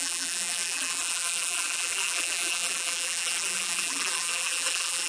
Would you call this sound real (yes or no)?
no